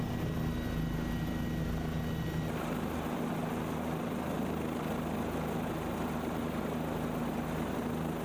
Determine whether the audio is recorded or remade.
recorded